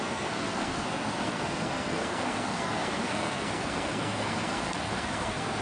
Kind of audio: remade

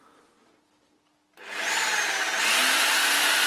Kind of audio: recorded